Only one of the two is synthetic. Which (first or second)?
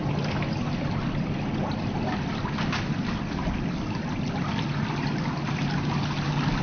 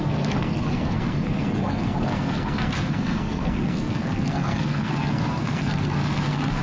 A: second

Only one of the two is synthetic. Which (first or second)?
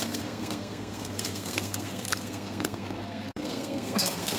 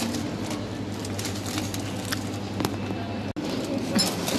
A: first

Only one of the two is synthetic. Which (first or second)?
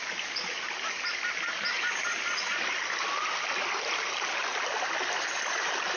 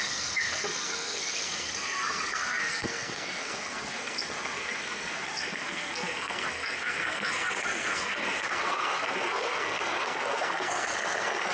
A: second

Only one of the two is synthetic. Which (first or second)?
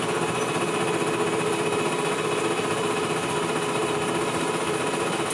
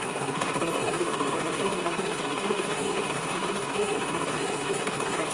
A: second